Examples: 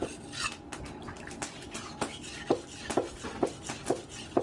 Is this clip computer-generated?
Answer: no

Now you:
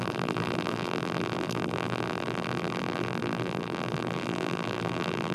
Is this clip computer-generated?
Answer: yes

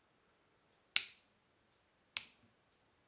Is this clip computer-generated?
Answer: no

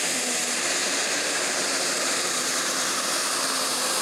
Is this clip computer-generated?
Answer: yes